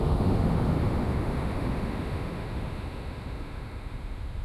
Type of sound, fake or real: fake